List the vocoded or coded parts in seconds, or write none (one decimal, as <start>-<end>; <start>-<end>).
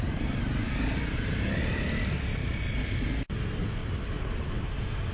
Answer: 3.8-4.5